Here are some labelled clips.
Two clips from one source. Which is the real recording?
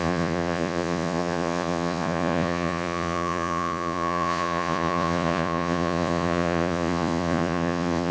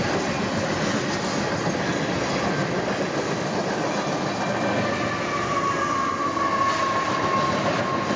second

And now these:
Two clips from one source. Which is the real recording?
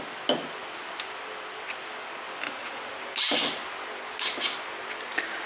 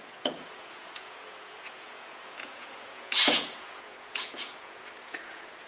first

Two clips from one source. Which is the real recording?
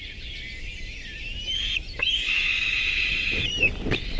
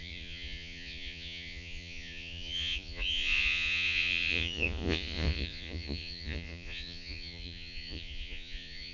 first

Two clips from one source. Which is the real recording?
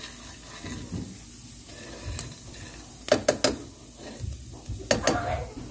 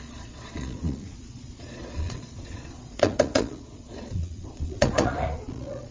first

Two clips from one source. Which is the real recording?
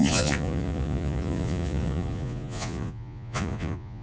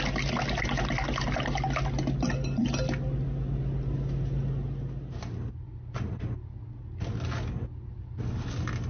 second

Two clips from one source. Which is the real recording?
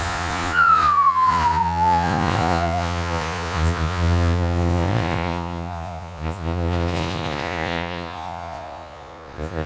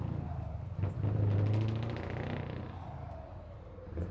second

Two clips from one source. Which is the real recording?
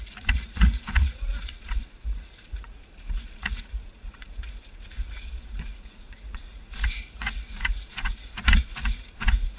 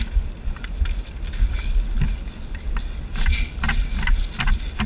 second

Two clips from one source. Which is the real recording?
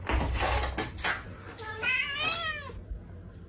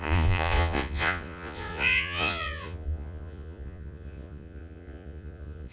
first